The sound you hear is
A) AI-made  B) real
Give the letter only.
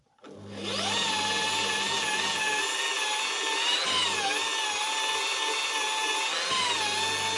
B